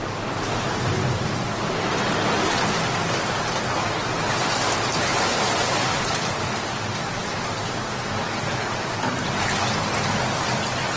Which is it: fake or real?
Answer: real